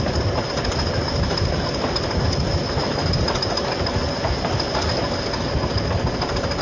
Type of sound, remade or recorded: recorded